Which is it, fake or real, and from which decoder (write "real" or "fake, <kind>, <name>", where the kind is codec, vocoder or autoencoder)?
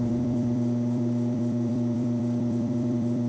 fake, vocoder, BigVGAN v2